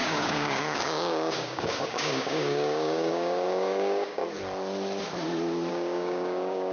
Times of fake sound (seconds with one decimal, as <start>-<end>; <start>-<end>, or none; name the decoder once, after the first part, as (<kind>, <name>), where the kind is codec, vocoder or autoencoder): 0.0-4.2 (codec, DAC); 5.7-6.7